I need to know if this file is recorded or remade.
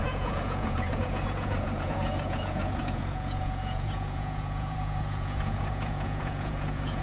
remade